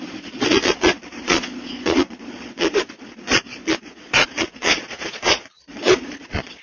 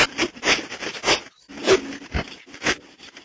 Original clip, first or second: second